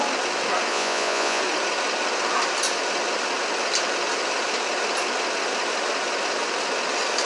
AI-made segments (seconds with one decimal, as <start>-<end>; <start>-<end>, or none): 0.7-1.4